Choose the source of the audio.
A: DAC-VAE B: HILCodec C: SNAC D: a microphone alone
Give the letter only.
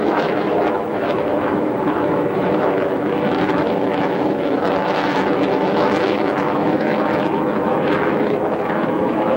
A